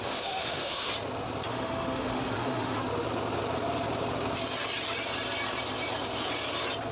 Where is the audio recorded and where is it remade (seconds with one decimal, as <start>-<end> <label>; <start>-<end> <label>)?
0.0-0.9 remade; 0.9-1.5 recorded; 1.5-2.8 remade; 2.8-6.9 recorded